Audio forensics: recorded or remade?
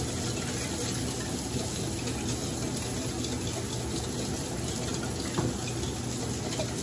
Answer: recorded